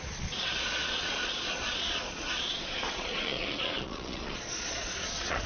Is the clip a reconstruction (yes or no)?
yes